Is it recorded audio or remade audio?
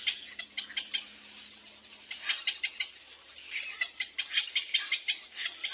recorded